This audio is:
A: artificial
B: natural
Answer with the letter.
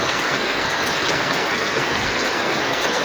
A